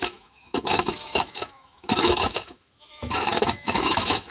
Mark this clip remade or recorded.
remade